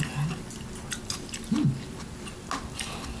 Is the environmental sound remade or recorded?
recorded